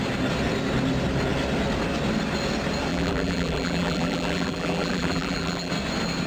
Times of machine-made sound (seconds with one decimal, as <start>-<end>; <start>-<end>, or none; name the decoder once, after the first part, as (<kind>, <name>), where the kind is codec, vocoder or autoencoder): 2.9-5.7 (vocoder, BigVGAN v2)